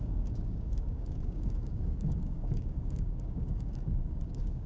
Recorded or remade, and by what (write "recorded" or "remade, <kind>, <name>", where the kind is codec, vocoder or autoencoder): remade, codec, DAC